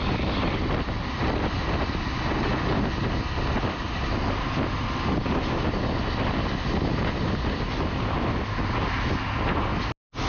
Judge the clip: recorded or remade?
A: recorded